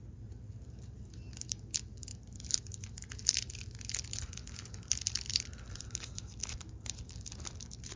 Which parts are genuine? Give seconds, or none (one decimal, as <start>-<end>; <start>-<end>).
0.0-8.0